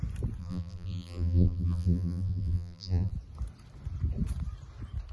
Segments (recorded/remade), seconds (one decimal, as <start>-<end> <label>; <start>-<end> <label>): 0.0-0.4 recorded; 0.4-3.1 remade; 3.1-5.1 recorded

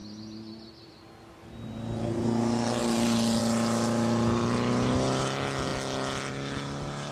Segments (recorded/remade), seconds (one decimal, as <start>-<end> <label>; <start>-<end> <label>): 0.0-7.1 recorded

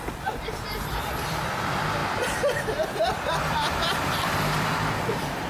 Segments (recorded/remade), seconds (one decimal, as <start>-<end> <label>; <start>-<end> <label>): 0.0-5.5 remade